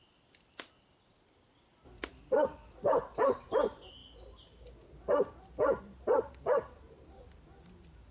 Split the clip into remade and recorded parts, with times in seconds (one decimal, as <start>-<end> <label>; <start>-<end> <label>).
0.0-8.1 recorded